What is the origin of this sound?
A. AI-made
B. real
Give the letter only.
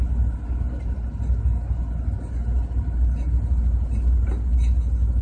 B